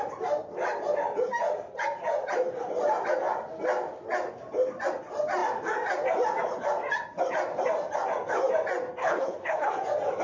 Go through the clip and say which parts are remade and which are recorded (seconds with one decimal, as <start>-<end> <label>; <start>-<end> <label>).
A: 0.0-9.0 recorded; 9.0-9.7 remade; 9.7-10.2 recorded